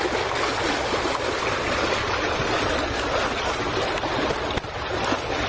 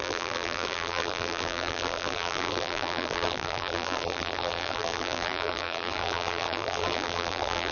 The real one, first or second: first